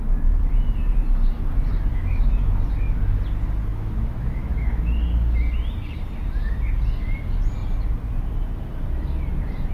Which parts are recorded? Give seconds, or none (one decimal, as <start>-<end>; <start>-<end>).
0.0-1.9; 2.5-3.7; 4.9-9.7